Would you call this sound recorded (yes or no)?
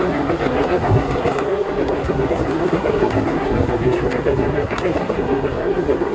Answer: no